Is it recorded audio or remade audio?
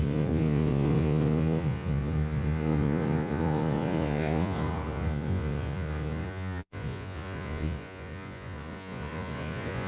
remade